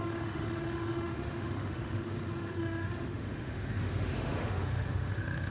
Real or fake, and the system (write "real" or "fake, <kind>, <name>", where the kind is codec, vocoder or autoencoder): fake, autoencoder, DAC-VAE